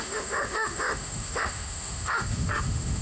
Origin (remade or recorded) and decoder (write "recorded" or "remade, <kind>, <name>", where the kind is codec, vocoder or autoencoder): remade, autoencoder, DAC-VAE